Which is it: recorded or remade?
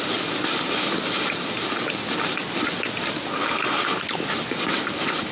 recorded